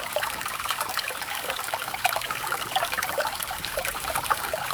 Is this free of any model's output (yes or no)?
no